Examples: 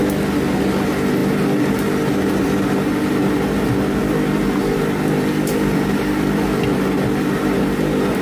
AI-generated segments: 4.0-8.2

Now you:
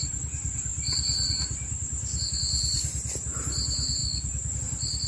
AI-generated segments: 0.0-4.0; 4.6-5.1

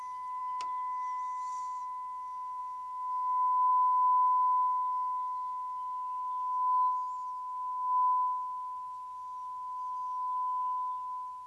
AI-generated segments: none